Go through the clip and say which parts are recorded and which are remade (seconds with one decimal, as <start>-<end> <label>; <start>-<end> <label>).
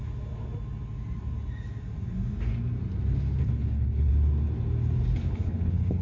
0.0-3.4 recorded; 3.4-4.1 remade; 4.1-5.2 recorded; 5.2-6.0 remade